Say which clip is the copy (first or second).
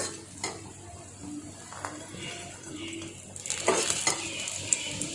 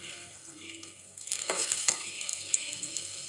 second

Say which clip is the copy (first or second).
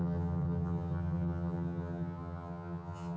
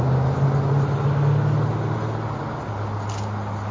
first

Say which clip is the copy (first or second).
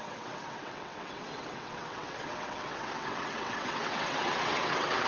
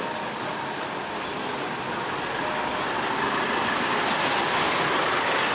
first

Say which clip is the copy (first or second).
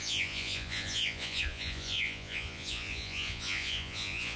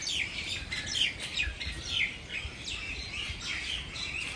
first